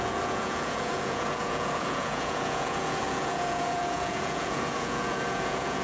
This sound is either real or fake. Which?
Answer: fake